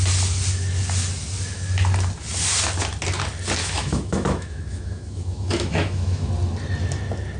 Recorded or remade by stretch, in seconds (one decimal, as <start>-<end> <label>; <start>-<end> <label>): 0.0-3.6 recorded; 3.6-6.3 remade; 6.3-7.4 recorded